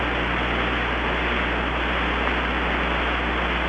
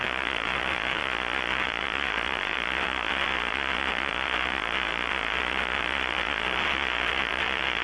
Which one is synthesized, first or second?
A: second